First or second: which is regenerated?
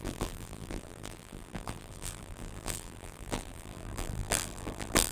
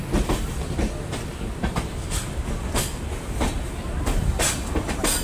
first